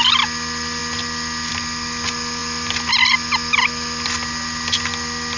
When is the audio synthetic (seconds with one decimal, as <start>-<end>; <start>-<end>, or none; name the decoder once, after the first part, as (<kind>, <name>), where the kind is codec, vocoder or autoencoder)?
none